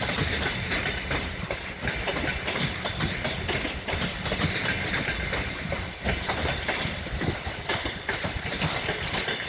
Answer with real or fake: real